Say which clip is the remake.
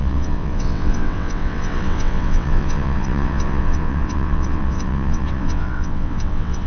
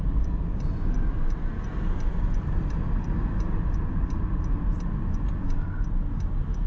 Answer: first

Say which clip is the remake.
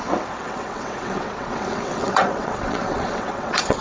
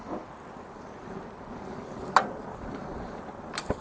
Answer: first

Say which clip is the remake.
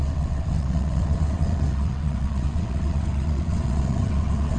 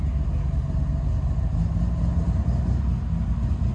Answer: first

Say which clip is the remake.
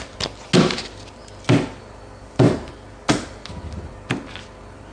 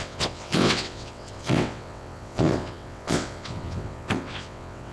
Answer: second